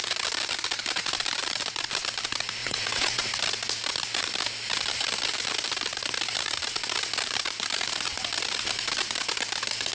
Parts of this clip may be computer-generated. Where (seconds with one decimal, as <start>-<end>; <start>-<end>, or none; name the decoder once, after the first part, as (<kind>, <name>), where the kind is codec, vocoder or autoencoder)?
2.6-3.3 (vocoder, Vocos)